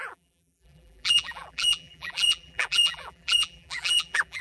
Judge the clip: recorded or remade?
remade